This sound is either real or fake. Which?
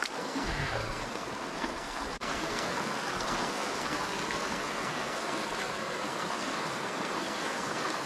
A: fake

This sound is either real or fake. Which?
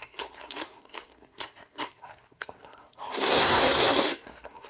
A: fake